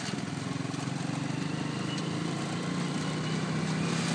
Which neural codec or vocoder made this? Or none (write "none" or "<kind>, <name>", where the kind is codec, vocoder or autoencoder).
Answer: none